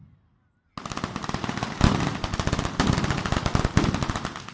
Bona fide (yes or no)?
yes